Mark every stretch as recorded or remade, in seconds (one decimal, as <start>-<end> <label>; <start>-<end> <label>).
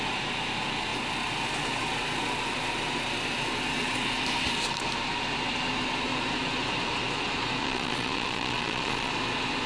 0.0-7.6 recorded; 7.6-9.1 remade; 9.1-9.7 recorded